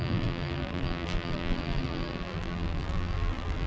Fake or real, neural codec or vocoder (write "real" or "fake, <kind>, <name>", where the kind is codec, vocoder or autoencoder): fake, vocoder, BigVGAN v2